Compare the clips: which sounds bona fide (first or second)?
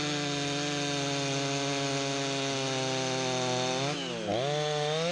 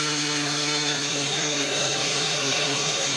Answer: first